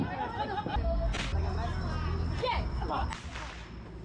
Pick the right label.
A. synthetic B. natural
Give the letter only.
B